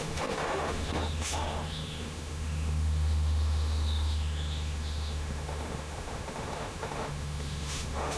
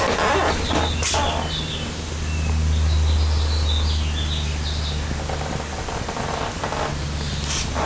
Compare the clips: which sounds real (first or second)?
second